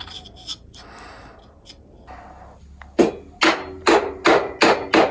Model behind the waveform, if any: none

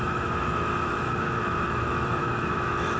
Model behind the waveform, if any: autoencoder, DAC-VAE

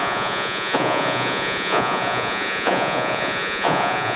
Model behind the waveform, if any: vocoder, Vocos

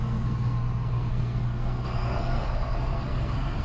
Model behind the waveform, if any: codec, SNAC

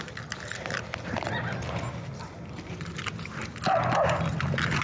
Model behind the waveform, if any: none